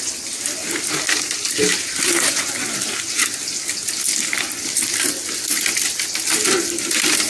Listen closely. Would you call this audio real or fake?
real